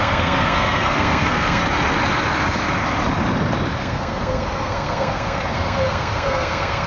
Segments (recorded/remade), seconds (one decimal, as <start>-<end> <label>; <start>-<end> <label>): 0.0-1.6 remade; 1.6-3.8 recorded; 3.8-6.9 remade